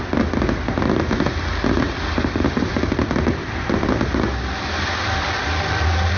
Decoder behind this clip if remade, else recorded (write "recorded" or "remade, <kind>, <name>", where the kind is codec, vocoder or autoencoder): recorded